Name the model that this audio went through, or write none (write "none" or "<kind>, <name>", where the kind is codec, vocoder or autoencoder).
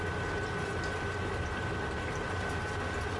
none